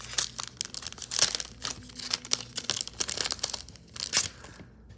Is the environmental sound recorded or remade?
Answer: recorded